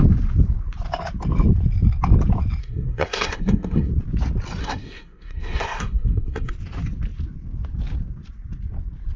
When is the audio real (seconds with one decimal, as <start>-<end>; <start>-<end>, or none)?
0.0-2.6; 3.9-4.6; 6.5-9.2